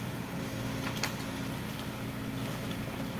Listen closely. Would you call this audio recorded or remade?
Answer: recorded